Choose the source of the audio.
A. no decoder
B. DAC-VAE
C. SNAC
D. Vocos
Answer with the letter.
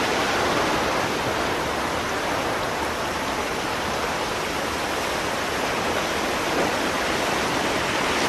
A